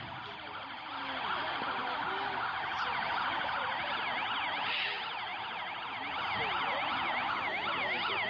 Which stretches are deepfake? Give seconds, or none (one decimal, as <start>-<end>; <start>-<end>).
none